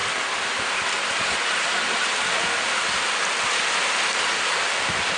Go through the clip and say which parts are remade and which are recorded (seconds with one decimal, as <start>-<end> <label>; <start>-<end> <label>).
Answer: 0.0-5.2 recorded